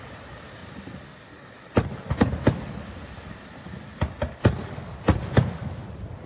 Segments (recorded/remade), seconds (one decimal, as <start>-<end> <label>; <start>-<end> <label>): 0.0-6.3 recorded

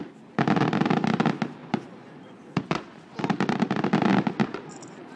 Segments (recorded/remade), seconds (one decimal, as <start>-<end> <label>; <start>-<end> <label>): 0.0-1.6 recorded; 1.6-3.2 remade; 3.2-5.2 recorded